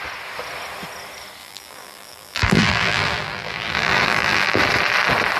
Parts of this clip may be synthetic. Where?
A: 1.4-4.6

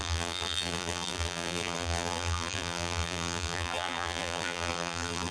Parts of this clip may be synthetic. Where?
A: 0.0-5.3

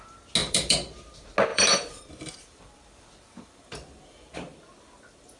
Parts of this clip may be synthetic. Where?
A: 0.4-1.0; 1.5-4.6

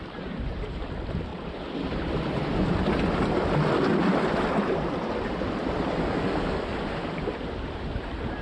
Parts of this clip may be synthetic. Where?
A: none